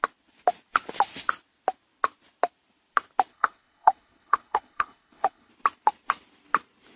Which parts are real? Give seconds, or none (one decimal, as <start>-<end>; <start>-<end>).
0.0-3.3; 5.5-7.0